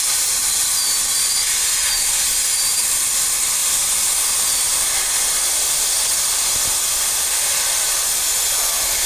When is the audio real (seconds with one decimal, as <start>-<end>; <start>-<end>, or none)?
0.0-9.1